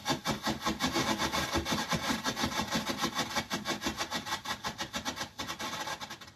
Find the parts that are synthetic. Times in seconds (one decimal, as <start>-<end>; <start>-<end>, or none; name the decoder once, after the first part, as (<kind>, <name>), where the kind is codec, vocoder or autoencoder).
0.0-2.9 (vocoder, BigVGAN v2); 4.1-4.9